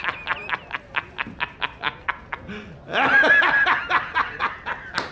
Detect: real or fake real